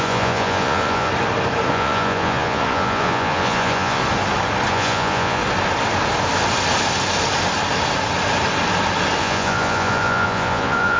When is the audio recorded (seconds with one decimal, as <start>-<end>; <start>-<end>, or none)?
1.1-1.7; 4.0-4.7; 5.4-9.2